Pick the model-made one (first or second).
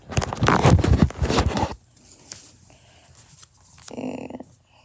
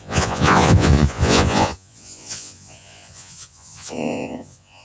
second